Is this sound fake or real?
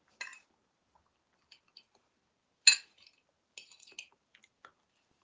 real